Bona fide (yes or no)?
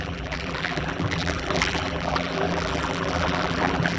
no